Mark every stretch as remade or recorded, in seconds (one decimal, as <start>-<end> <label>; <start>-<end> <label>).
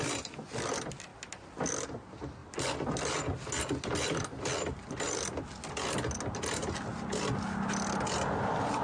0.0-8.8 recorded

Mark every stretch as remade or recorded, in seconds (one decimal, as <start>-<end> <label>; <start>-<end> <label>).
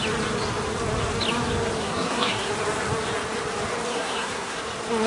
0.0-1.8 recorded; 1.8-2.5 remade; 2.5-3.9 recorded; 3.9-4.6 remade; 4.6-5.1 recorded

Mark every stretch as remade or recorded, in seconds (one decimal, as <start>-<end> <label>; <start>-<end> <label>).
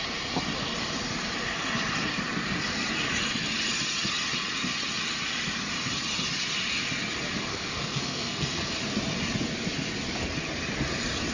0.0-7.5 recorded; 7.5-8.7 remade; 8.7-11.3 recorded